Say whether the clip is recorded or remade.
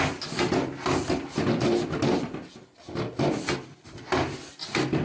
recorded